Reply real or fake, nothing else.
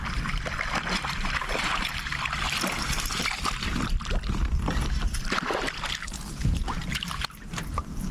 real